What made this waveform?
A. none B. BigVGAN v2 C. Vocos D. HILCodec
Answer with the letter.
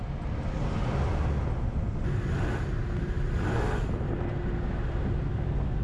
A